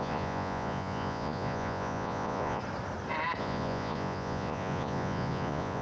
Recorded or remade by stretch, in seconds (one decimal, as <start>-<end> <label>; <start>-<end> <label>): 0.0-2.6 remade; 2.6-3.4 recorded; 3.4-5.8 remade